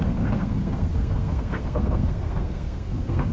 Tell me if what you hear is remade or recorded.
remade